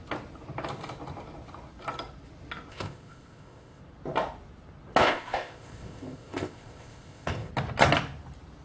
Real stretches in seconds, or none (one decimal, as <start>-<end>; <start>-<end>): 0.0-2.7; 3.8-5.0; 7.5-8.6